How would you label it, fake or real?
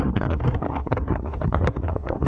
fake